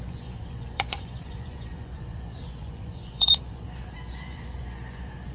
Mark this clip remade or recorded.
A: remade